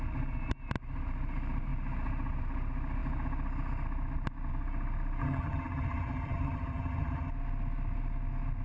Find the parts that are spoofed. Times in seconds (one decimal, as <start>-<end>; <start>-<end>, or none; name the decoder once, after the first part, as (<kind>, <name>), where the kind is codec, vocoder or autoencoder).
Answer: 5.2-7.3 (vocoder, HiFi-GAN)